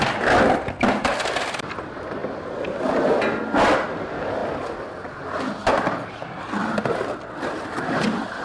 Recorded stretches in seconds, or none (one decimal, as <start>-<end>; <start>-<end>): 0.0-8.4